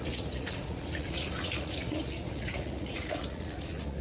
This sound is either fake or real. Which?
fake